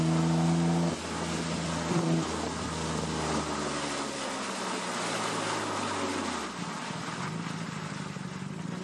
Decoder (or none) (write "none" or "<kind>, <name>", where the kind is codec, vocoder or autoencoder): none